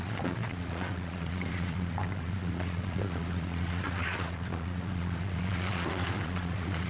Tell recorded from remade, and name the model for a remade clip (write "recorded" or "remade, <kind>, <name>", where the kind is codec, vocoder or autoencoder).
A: remade, vocoder, Vocos